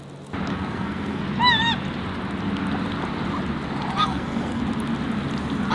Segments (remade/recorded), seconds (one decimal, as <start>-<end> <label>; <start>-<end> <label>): 0.0-0.5 recorded; 0.5-1.2 remade; 1.2-4.0 recorded; 4.0-4.6 remade; 4.6-5.7 recorded